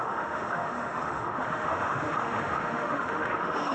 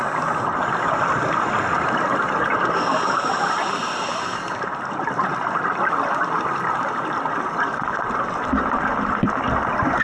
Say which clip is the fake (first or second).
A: first